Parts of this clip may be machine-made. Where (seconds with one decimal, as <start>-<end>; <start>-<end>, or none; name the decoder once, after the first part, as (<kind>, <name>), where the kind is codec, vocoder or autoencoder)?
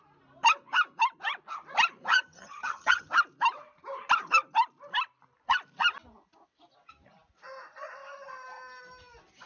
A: 2.1-3.1 (vocoder, HiFi-GAN)